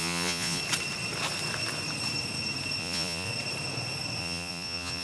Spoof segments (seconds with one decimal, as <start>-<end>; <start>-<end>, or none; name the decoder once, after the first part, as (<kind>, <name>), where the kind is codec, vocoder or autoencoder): 0.0-0.6 (vocoder, Vocos); 2.8-3.3; 4.2-5.0